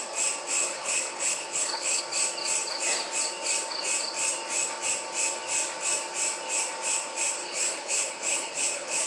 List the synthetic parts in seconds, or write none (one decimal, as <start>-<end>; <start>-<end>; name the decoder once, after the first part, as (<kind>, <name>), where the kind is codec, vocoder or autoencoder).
0.6-2.0 (codec, HILCodec); 7.4-9.1